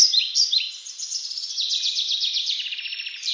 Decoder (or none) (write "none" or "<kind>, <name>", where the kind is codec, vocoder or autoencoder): none